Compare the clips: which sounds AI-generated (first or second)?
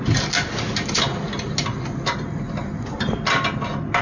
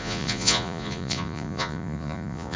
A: second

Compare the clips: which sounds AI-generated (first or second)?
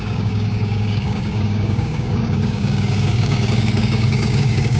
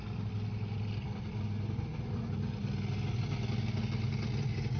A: first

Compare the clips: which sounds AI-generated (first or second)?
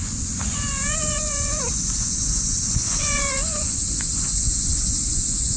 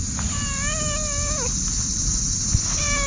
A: first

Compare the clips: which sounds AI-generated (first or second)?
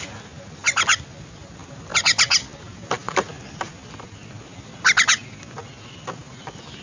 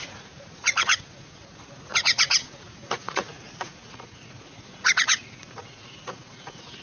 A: second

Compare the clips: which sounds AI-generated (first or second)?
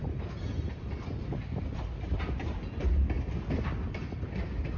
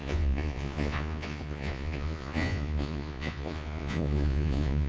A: second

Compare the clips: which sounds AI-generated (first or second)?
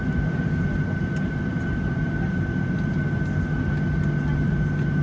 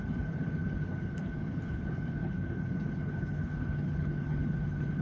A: second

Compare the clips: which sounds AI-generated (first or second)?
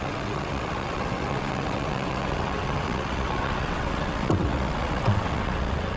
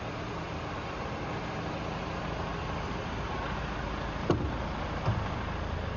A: first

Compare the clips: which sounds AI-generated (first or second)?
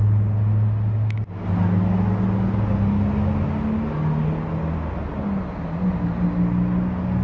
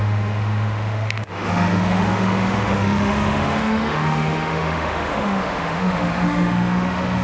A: second